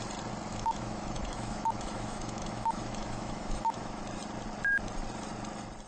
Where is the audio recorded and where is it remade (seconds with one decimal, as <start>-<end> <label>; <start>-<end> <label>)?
0.0-0.5 recorded; 0.5-4.0 remade; 4.0-5.9 recorded